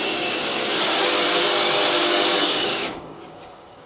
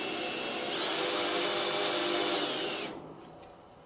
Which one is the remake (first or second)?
first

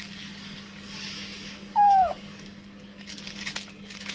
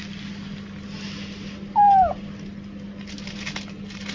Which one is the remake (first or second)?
first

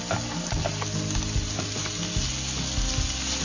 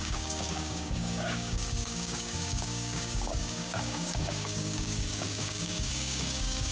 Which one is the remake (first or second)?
second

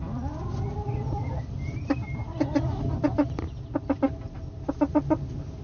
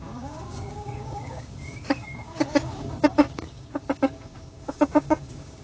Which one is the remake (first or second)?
second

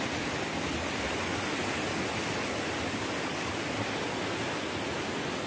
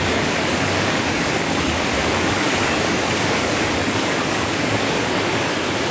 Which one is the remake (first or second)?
second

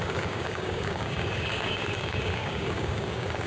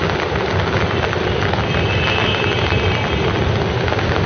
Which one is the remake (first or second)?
first